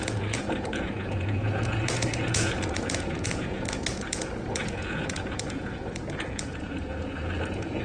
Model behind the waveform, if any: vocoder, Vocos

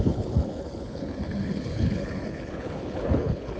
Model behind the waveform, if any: codec, HILCodec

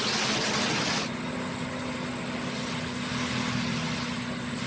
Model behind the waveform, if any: none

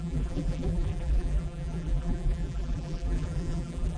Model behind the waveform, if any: vocoder, BigVGAN v2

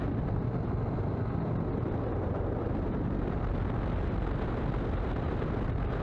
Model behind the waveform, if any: none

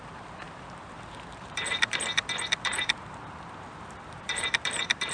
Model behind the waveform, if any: vocoder, BigVGAN v2